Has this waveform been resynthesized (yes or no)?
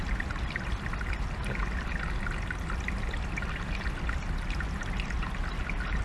no